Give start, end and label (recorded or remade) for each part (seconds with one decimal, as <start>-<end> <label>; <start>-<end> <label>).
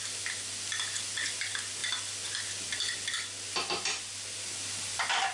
0.0-5.3 recorded